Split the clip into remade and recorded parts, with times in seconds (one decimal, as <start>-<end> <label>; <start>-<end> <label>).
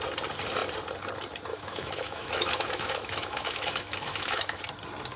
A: 0.0-1.5 recorded; 1.5-4.6 remade; 4.6-5.2 recorded